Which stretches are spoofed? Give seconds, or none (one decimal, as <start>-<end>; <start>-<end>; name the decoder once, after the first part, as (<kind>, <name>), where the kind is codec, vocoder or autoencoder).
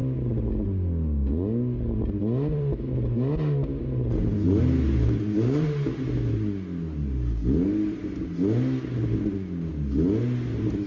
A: none